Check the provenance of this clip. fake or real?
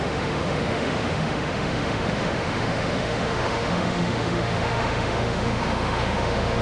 fake